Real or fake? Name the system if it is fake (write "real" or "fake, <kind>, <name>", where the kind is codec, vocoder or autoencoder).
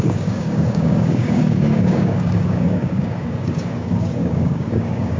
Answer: fake, codec, DAC